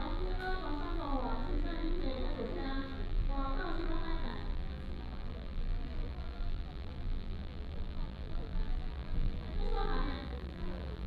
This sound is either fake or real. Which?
fake